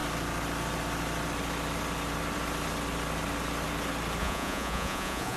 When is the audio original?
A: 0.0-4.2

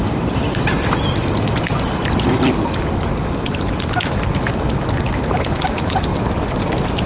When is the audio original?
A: 0.0-1.2; 4.6-7.1

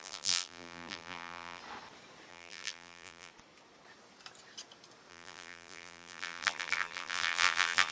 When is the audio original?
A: 1.6-2.3; 3.3-5.1

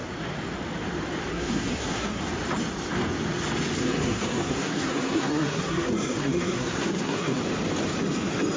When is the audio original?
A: 0.0-1.3; 2.2-3.8; 7.4-8.6